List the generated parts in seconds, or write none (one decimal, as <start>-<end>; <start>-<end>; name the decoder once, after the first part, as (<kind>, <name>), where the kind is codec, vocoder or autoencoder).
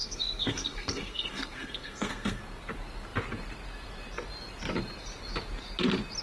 0.0-2.4 (codec, SNAC)